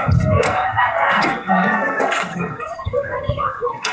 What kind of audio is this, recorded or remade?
remade